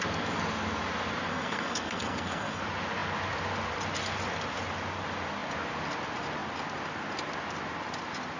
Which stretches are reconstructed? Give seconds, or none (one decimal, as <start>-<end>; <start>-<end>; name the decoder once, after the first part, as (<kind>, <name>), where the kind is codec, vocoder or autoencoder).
1.3-2.6 (codec, SNAC)